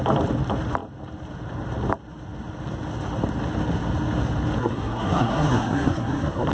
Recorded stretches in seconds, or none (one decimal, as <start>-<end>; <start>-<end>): 0.0-4.6